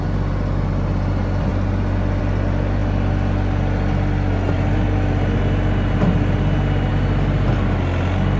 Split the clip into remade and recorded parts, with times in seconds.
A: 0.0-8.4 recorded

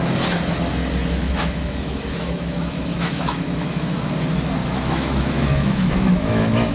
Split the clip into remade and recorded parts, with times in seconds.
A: 0.0-1.0 recorded; 1.0-4.1 remade; 4.1-4.6 recorded; 4.6-6.7 remade

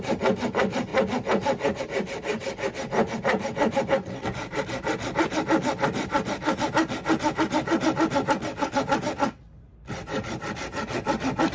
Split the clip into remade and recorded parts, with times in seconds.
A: 0.0-11.5 recorded

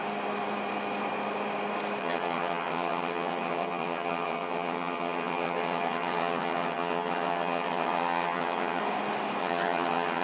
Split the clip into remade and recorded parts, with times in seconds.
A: 0.0-2.0 recorded; 2.0-8.8 remade; 8.8-9.4 recorded; 9.4-10.2 remade